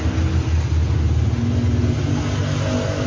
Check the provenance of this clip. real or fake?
real